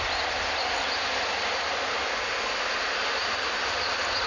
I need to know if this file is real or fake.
real